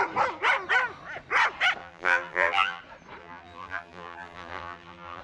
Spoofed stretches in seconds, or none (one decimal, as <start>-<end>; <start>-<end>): 1.8-2.8; 3.2-5.2